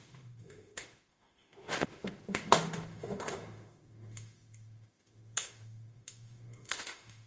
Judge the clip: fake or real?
fake